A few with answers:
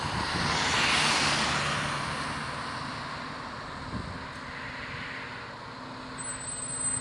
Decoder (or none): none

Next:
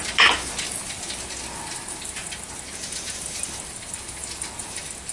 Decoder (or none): none